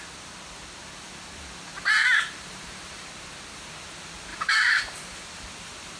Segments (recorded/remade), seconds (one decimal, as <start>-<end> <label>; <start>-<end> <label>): 0.0-1.7 recorded; 1.7-3.1 remade; 3.1-4.3 recorded; 4.3-5.2 remade; 5.2-6.0 recorded